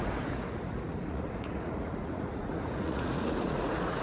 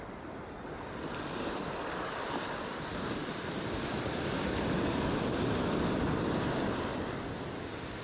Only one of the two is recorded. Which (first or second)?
second